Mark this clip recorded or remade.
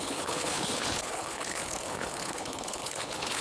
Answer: remade